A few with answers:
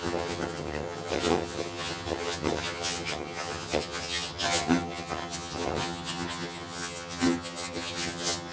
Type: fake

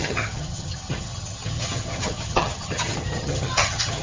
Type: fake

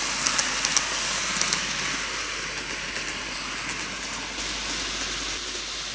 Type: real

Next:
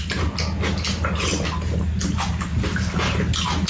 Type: real